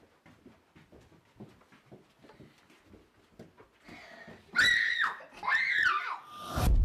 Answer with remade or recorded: recorded